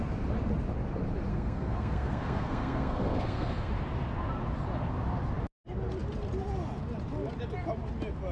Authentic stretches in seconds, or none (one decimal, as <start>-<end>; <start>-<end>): 0.0-1.3; 3.7-8.3

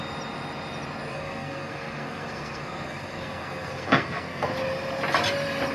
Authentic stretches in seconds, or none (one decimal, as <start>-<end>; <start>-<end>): 0.0-1.1; 4.5-5.7